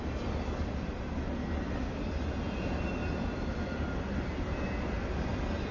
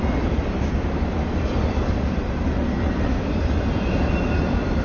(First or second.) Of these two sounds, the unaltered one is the first